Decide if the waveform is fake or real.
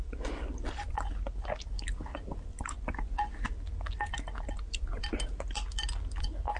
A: real